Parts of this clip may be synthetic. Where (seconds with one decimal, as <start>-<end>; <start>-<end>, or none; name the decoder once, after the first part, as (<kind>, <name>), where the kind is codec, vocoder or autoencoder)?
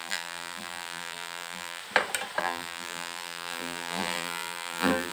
0.0-1.8 (vocoder, BigVGAN v2); 2.4-5.1